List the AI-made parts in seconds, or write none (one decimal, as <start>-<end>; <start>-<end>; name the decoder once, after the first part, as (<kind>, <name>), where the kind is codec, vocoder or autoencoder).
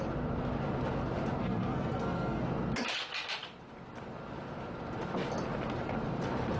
1.4-2.4 (codec, SNAC)